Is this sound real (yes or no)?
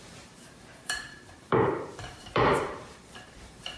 no